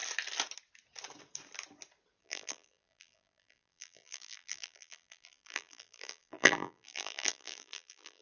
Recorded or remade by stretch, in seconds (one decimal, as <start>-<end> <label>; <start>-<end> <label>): 0.0-2.2 recorded; 2.2-8.2 remade